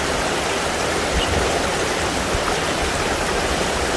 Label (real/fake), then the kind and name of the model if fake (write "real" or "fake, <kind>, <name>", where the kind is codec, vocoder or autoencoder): real